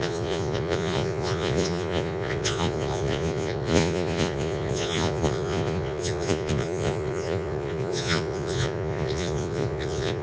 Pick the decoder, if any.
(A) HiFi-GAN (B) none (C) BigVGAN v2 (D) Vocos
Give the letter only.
D